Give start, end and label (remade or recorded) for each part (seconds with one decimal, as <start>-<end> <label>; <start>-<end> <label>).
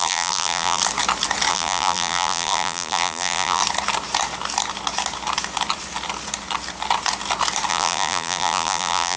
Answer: 0.0-0.8 remade; 0.8-1.5 recorded; 1.5-3.6 remade; 3.6-7.7 recorded; 7.7-9.2 remade